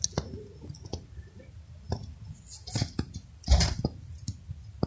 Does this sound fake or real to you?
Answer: real